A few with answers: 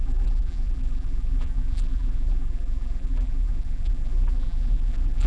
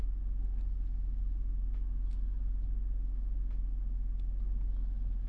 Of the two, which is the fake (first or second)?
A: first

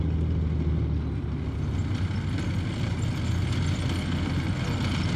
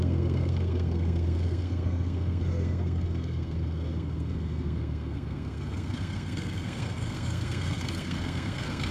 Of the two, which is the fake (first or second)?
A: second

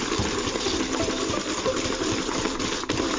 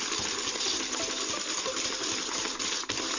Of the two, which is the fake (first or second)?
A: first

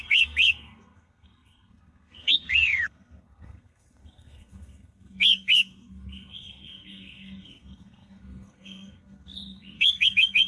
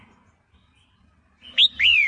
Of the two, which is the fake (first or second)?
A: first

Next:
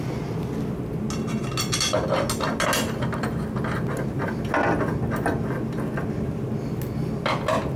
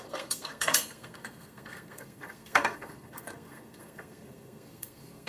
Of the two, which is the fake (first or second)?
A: second